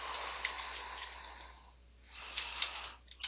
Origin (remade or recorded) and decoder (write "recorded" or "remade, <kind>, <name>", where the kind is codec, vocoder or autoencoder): recorded